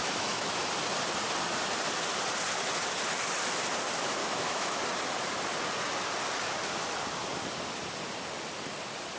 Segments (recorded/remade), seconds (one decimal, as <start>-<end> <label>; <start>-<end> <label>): 0.0-0.5 remade; 0.5-4.2 recorded; 4.2-4.8 remade; 4.8-9.2 recorded